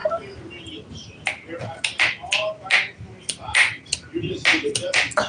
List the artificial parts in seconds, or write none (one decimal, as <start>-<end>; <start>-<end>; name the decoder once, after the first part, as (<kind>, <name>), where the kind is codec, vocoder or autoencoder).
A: none